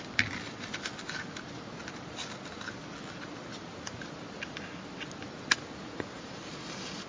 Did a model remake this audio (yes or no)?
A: no